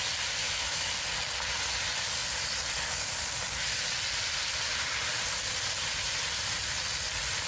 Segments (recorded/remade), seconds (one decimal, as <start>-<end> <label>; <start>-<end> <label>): 0.0-0.4 recorded; 0.4-0.9 remade; 0.9-7.5 recorded